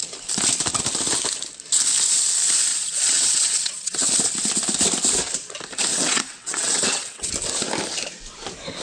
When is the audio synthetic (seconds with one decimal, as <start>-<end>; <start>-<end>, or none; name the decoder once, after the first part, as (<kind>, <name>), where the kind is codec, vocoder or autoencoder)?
2.7-4.1 (vocoder, WaveNeXt); 5.9-7.3